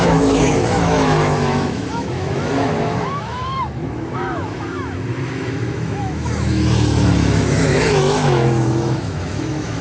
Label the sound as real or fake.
fake